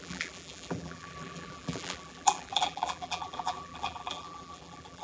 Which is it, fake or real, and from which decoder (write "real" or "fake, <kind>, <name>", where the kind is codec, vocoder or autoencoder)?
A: fake, vocoder, BigVGAN v2